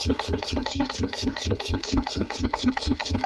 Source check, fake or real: fake